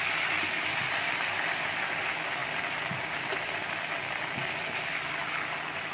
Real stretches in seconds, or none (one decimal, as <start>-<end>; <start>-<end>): 0.0-5.9